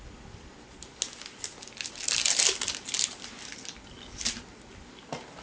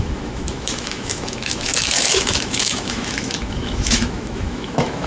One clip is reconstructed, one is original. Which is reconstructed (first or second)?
second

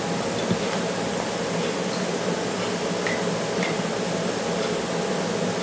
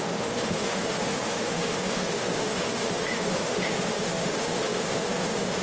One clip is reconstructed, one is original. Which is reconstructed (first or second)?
second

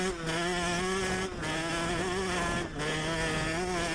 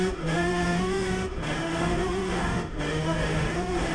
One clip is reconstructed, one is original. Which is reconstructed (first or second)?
second